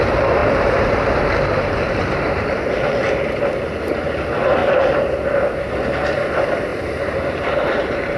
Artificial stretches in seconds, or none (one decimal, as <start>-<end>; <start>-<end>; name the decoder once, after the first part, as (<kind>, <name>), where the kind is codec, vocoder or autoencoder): 0.4-3.4 (vocoder, BigVGAN v2); 4.6-5.6; 6.7-8.2